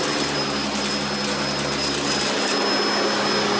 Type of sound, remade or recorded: recorded